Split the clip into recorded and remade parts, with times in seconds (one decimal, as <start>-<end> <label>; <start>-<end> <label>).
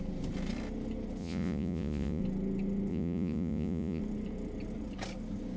0.0-1.2 recorded; 1.2-2.2 remade; 2.2-2.9 recorded; 2.9-4.0 remade; 4.0-5.6 recorded